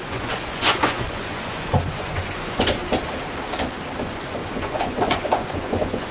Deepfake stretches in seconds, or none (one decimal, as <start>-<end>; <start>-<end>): 0.0-2.8; 4.0-6.1